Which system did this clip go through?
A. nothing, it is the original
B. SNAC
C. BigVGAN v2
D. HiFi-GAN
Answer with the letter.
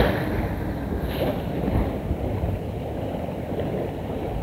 A